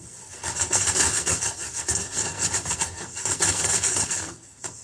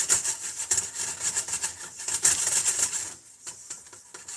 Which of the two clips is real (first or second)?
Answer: second